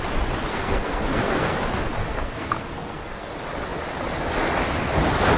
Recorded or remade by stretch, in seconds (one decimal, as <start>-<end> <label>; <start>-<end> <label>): 0.0-0.5 recorded; 0.5-1.6 remade; 1.6-2.0 recorded; 2.0-3.3 remade; 3.3-5.4 recorded